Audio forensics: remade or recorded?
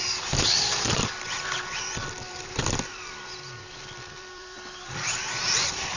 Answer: remade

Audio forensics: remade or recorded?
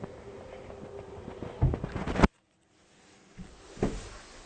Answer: recorded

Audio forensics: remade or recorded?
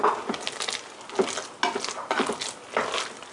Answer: recorded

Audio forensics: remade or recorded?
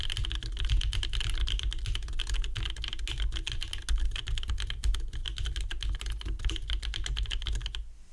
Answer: recorded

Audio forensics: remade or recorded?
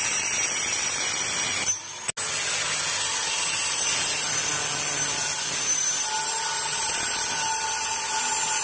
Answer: recorded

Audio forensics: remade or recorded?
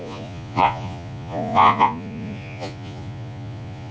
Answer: remade